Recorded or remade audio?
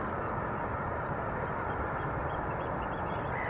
recorded